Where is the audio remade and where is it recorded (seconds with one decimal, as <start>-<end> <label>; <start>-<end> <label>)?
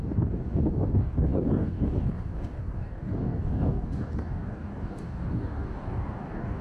0.0-6.6 remade